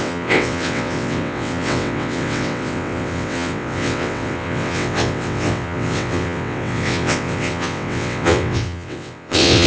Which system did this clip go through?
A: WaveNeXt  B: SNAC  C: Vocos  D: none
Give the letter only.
A